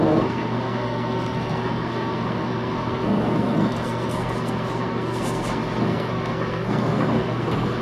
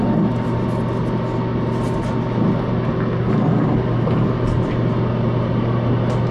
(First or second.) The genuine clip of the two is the second